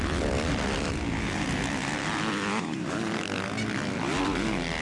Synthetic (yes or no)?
no